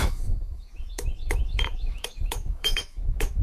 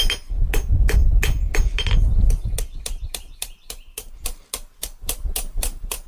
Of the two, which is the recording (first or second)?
second